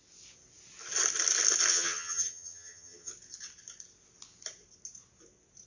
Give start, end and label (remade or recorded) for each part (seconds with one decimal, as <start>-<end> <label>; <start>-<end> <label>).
0.0-1.7 recorded; 1.7-3.1 remade; 3.1-5.7 recorded